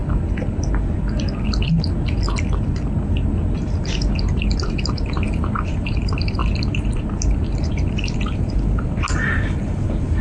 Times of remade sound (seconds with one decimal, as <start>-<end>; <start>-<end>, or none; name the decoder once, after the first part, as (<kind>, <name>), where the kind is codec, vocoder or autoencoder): 4.3-10.2 (vocoder, BigVGAN v2)